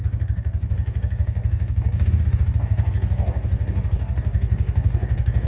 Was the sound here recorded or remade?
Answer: remade